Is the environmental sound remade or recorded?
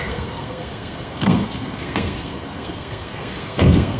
remade